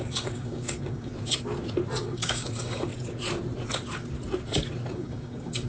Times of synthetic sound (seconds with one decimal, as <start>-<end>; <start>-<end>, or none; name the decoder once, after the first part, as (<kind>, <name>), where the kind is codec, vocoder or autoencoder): 0.0-1.1 (codec, DAC); 2.0-2.9; 4.9-5.7